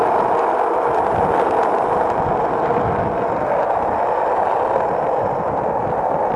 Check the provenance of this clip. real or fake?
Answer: real